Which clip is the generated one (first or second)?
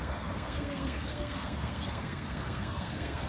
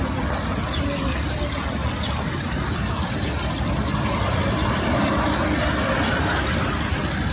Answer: first